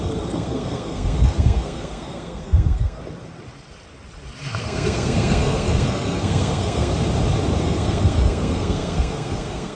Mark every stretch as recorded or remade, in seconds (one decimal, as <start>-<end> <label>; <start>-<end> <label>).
0.0-3.0 remade; 3.0-4.6 recorded; 4.6-6.9 remade; 6.9-7.6 recorded; 7.6-9.7 remade